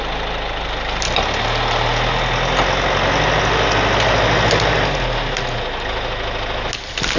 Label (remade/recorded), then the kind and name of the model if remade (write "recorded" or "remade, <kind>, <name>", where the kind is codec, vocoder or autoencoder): recorded